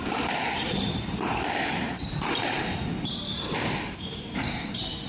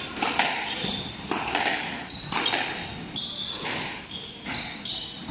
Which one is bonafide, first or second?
second